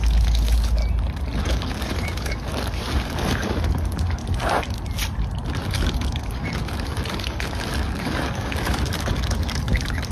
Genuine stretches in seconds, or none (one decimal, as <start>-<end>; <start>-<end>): 0.8-1.4; 4.2-5.5